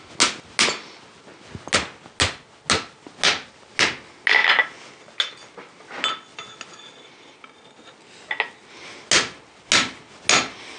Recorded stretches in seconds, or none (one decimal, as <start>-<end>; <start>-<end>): 0.0-10.8